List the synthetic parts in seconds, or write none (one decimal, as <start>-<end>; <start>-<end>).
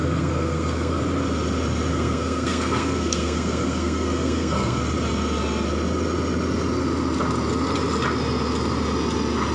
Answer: 0.0-1.0; 1.9-4.8